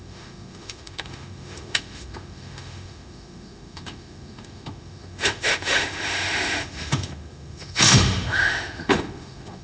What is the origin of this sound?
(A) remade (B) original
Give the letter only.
A